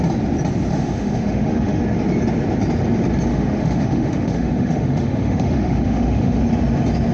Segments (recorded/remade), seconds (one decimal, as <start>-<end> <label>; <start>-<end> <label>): 0.0-0.7 recorded; 0.7-1.8 remade; 1.8-3.3 recorded; 3.3-6.4 remade; 6.4-7.1 recorded